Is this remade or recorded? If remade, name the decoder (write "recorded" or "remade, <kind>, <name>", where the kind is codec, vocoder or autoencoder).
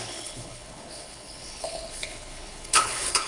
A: remade, codec, HILCodec